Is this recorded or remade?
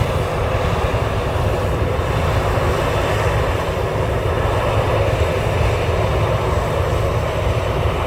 recorded